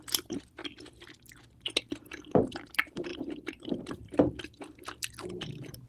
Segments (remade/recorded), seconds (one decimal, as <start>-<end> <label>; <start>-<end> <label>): 0.0-0.6 remade; 0.6-1.8 recorded; 1.8-5.9 remade